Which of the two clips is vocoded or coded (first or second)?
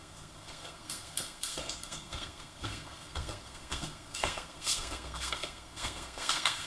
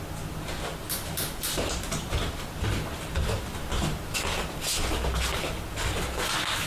first